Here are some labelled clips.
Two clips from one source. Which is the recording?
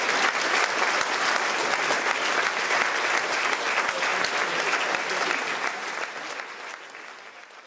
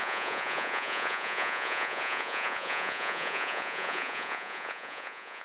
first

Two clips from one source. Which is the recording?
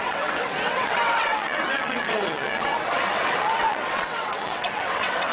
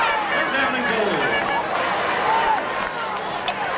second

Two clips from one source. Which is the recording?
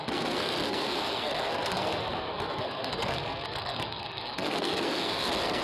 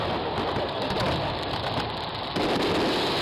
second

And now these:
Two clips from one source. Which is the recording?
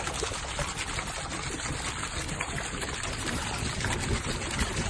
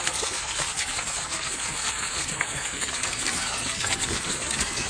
first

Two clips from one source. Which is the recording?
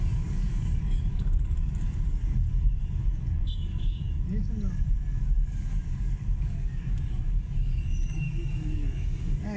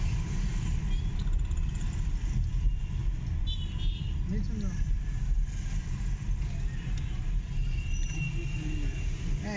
second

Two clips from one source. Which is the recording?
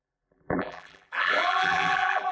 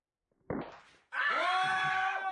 second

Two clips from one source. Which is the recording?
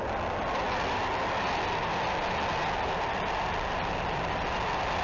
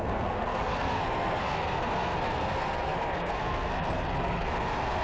first